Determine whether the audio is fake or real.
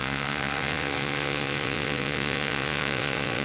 fake